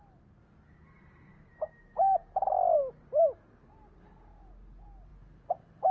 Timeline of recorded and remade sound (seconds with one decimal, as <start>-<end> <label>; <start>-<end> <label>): 0.0-5.9 recorded